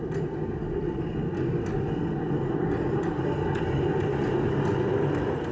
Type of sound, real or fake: real